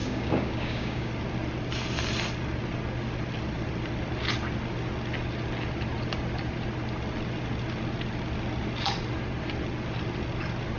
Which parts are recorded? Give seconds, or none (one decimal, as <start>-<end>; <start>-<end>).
1.1-10.8

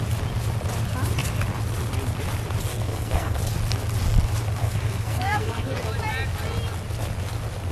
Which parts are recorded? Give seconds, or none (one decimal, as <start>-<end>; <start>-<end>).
0.0-2.7; 3.4-4.6; 5.8-7.7

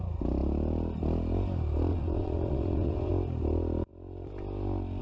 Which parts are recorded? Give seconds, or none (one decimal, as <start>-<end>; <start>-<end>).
0.0-1.9; 3.1-5.0

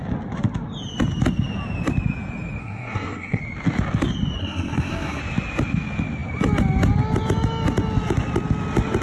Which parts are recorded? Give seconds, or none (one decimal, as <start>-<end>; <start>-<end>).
0.0-2.6; 3.4-4.4; 5.2-9.0

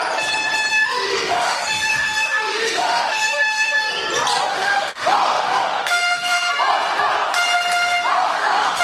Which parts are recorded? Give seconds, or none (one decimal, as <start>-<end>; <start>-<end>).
0.0-0.7; 3.9-4.5; 6.5-8.1

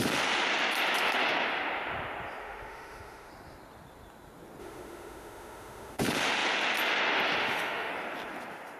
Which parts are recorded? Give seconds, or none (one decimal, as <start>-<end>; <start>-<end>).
0.0-2.4; 3.3-4.6; 6.0-7.4; 7.9-8.8